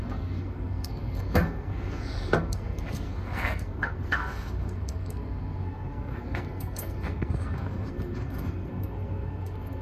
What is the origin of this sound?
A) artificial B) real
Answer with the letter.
A